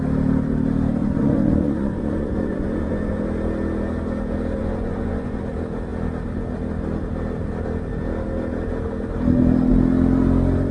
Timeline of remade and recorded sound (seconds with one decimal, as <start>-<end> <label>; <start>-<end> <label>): 0.0-1.0 recorded; 1.0-3.2 remade; 3.2-4.6 recorded; 4.6-5.4 remade; 5.4-10.7 recorded